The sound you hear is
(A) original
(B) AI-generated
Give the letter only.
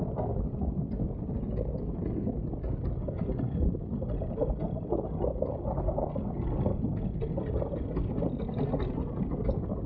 A